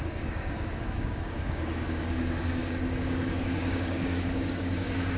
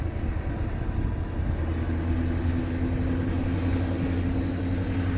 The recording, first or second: second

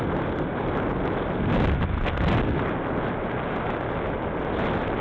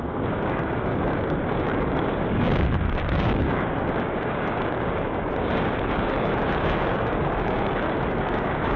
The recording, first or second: first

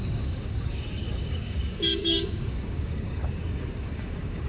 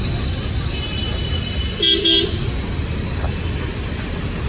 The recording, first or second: second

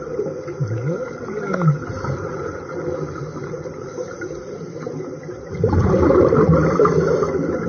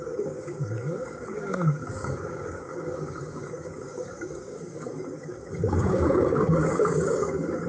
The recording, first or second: first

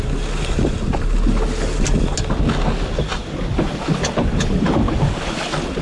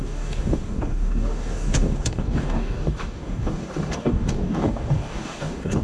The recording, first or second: first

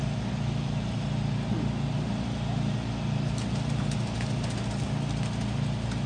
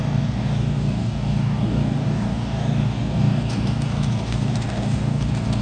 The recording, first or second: first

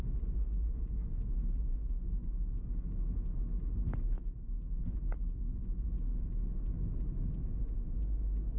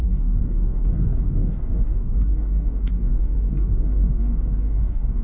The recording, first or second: first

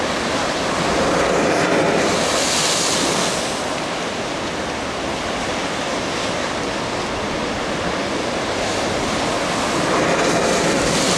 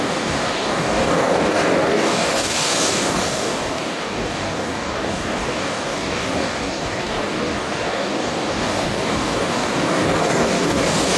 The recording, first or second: first